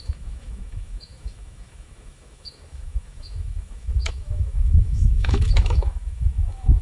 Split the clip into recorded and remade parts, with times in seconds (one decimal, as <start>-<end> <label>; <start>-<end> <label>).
0.0-6.8 remade